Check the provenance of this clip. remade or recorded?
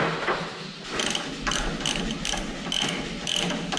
recorded